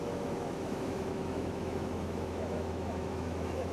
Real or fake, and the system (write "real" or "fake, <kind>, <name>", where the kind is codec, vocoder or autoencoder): fake, autoencoder, DAC-VAE